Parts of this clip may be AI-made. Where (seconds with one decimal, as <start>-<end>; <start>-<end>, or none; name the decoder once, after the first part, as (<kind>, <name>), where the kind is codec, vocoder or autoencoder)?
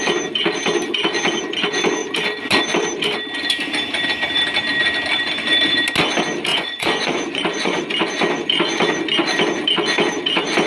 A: 6.5-7.8 (vocoder, Vocos)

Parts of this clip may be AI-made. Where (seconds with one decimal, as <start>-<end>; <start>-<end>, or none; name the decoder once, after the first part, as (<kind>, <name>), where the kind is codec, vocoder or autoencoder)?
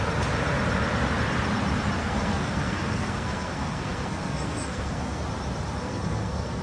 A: 2.0-5.2 (codec, SNAC); 5.8-6.6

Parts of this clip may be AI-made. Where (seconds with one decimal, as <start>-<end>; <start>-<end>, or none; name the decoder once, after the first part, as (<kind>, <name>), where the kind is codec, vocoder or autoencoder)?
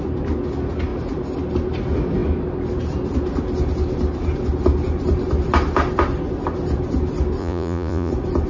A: 7.4-8.1 (vocoder, Vocos)